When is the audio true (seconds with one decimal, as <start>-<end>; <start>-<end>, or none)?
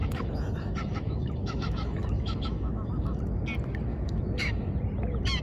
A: 3.2-3.9; 4.7-5.4